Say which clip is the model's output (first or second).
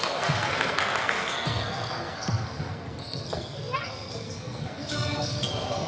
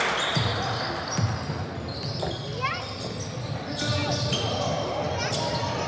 first